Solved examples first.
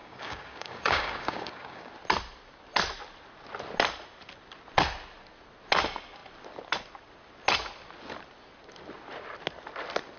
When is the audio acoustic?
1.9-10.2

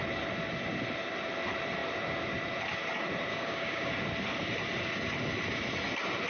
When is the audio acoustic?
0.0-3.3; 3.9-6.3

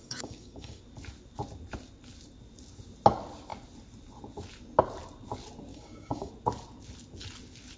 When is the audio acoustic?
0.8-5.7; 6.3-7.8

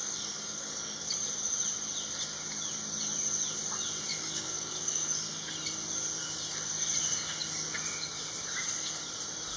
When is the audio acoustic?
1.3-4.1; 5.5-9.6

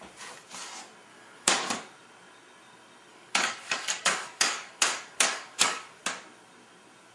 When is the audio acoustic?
0.0-1.1; 1.7-3.1; 6.0-7.1

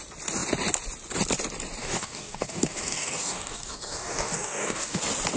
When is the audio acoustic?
0.0-1.8; 5.0-5.4

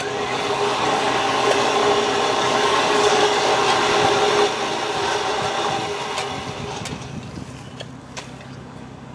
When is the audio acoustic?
1.8-2.4; 3.5-8.0

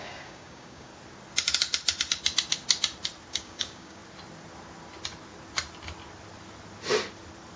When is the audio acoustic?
0.9-3.3; 4.0-7.6